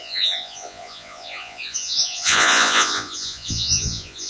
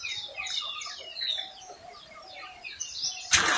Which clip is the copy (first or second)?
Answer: first